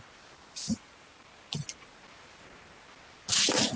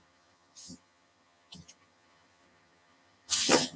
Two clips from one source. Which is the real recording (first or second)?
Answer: first